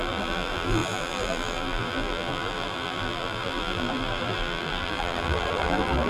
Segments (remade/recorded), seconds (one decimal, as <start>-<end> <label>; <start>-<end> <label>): 0.0-6.1 remade